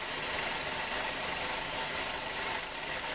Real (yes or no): yes